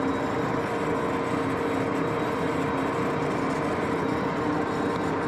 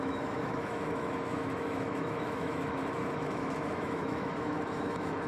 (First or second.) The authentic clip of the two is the first